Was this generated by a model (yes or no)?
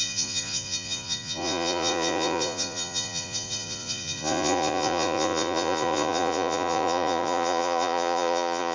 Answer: yes